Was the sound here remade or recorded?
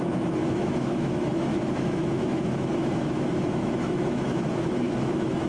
remade